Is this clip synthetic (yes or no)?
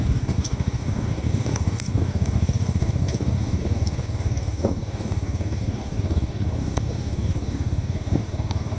yes